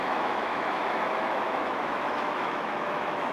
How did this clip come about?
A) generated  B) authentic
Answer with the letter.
A